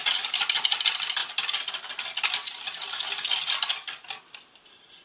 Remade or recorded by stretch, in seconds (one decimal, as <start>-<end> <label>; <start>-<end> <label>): 0.0-5.0 recorded